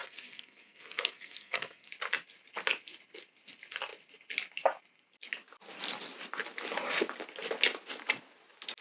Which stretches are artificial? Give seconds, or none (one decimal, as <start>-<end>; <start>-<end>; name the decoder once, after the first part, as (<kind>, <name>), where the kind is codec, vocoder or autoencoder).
0.0-1.9 (codec, SNAC)